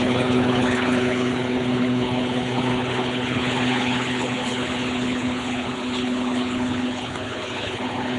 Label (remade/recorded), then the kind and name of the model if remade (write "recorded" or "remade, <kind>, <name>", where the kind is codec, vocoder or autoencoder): remade, codec, HILCodec